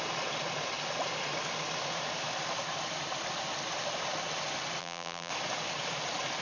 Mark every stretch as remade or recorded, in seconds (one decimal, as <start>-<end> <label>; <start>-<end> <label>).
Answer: 0.0-4.8 recorded; 4.8-5.3 remade; 5.3-6.4 recorded